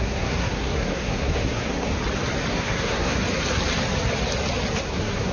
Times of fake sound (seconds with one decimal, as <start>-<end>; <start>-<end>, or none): 0.0-1.9; 2.5-3.2; 4.8-5.3